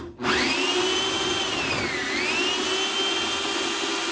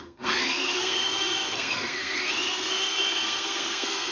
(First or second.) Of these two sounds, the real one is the first